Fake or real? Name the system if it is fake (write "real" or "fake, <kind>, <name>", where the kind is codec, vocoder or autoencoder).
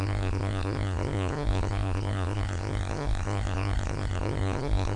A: fake, codec, SNAC